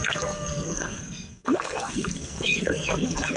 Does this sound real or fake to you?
fake